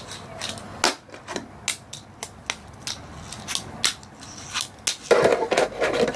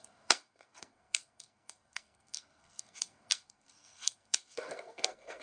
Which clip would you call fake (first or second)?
second